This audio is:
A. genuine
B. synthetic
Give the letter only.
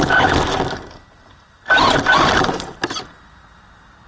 A